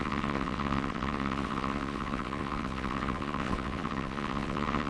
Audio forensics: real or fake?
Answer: fake